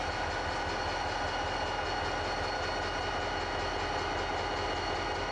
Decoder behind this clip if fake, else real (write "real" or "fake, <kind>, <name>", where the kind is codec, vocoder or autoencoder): real